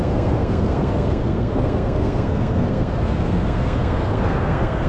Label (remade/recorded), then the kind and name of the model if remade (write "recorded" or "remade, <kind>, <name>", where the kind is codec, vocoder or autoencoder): remade, codec, SNAC